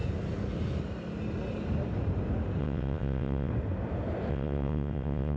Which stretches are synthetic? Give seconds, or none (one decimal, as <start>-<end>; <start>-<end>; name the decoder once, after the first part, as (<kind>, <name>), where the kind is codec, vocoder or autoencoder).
2.6-3.5 (vocoder, WaveNeXt); 4.3-5.4